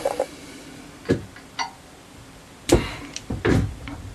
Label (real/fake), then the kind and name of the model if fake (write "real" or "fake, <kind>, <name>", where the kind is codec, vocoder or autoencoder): fake, vocoder, BigVGAN v2